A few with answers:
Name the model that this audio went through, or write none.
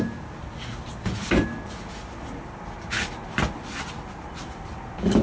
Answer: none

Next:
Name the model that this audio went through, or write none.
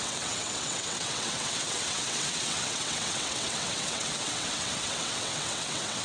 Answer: vocoder, WaveNeXt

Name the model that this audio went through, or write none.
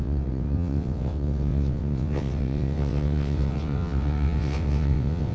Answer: vocoder, WaveNeXt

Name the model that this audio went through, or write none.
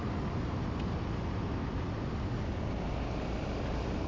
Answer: none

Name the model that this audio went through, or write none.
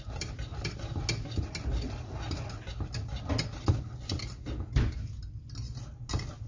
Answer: none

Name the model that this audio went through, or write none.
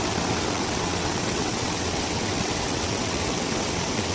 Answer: vocoder, WaveNeXt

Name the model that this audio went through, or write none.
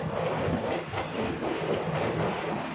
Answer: none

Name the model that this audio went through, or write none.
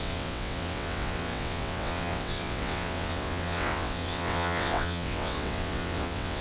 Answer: vocoder, WaveNeXt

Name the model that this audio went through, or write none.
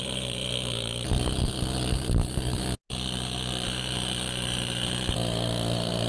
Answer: none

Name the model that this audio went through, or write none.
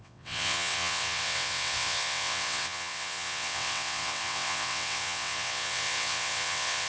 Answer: vocoder, WaveNeXt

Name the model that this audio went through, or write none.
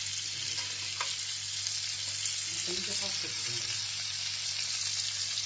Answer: none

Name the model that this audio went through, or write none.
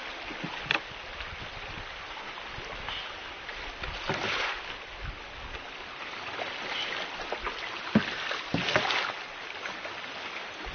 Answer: none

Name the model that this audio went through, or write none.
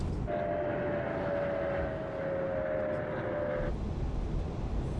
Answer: none